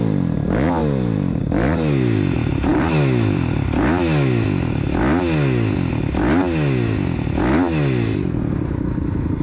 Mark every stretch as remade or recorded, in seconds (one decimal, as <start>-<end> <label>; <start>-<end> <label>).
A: 0.0-2.7 recorded; 2.7-3.7 remade; 3.7-9.4 recorded